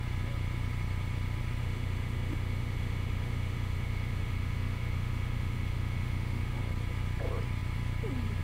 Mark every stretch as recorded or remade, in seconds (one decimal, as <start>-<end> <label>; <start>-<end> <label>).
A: 0.0-1.6 recorded; 1.6-6.6 remade; 6.6-8.4 recorded